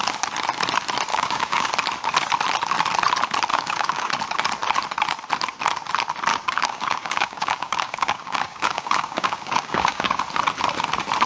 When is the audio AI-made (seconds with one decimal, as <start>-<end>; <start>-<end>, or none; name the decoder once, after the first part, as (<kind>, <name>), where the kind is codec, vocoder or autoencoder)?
1.1-1.7 (codec, DAC); 3.5-4.1; 6.3-10.2